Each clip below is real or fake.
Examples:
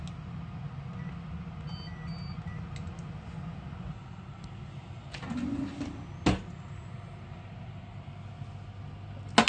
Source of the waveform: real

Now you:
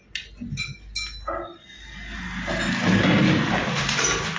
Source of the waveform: real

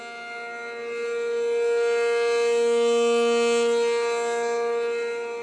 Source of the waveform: real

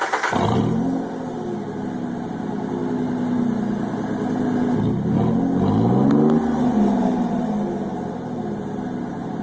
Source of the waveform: real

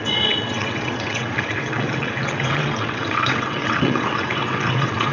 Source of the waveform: fake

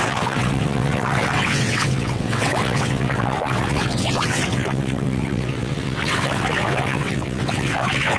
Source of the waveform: fake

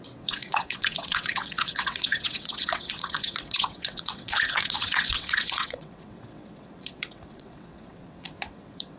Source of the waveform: fake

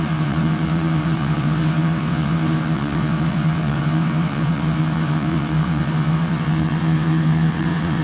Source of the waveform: fake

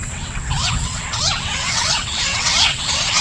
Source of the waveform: fake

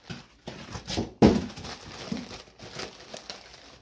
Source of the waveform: real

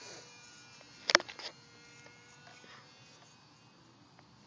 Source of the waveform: real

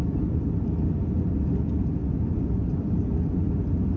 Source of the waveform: real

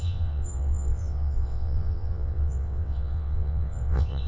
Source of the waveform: fake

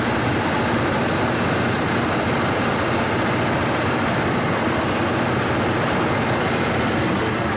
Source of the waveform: real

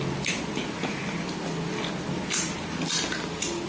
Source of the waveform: real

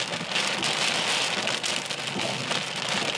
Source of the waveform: real